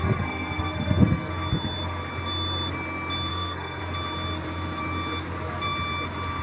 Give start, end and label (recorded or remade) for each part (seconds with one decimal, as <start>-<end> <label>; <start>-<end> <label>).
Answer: 0.0-1.3 remade; 1.3-3.3 recorded; 3.3-3.8 remade; 3.8-6.4 recorded